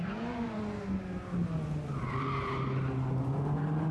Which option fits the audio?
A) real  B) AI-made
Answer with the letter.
A